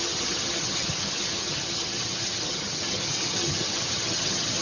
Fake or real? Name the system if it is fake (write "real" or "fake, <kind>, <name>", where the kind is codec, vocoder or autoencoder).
fake, vocoder, HiFi-GAN